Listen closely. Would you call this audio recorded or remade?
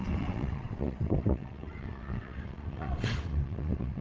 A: remade